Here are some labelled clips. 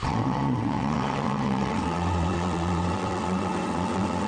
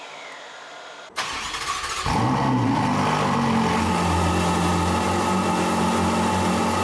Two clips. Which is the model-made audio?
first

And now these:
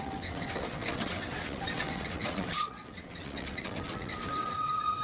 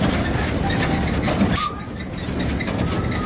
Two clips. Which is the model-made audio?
first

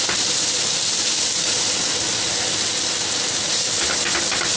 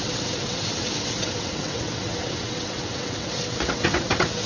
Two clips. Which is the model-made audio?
second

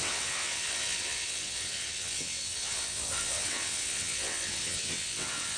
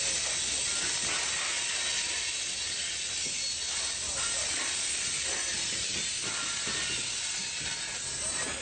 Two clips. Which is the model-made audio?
first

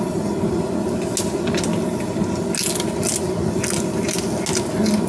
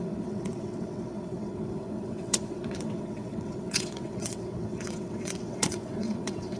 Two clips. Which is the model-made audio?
second